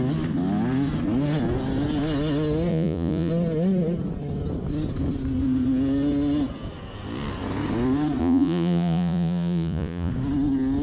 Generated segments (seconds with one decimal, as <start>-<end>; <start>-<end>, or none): 2.7-3.3; 8.2-10.1